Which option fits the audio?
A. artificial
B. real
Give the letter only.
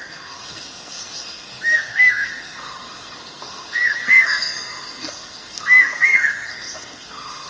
A